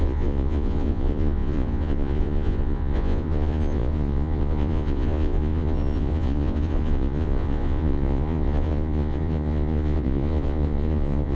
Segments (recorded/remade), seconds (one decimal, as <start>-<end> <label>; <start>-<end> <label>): 0.0-11.3 remade

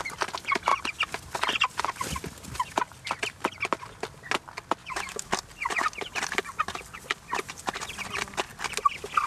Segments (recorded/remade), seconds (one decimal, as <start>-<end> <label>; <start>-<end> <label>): 0.0-4.8 recorded; 4.8-5.3 remade; 5.3-9.3 recorded